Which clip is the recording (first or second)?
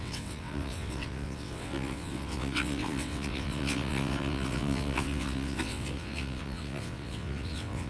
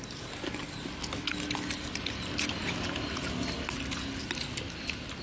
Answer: second